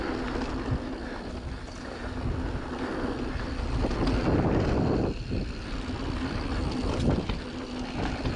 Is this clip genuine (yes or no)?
yes